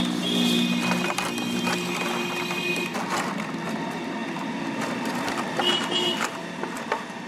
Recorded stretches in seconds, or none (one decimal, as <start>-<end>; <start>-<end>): 0.0-7.3